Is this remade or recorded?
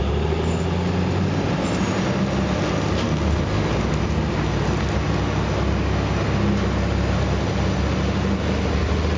recorded